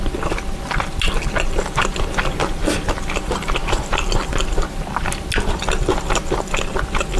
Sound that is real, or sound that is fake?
real